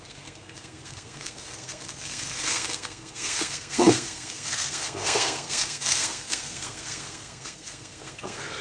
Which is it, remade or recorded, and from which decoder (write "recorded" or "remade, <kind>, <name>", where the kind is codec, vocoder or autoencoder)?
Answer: remade, codec, SNAC